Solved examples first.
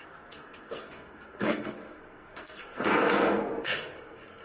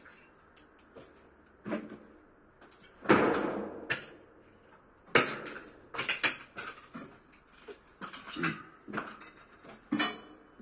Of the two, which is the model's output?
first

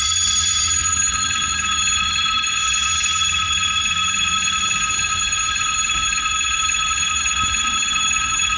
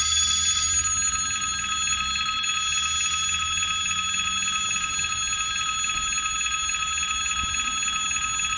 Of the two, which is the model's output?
first